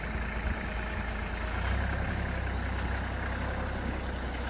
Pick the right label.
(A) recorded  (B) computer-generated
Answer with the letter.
A